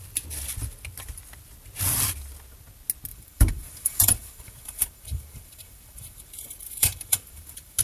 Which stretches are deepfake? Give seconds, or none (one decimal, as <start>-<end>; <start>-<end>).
3.1-7.8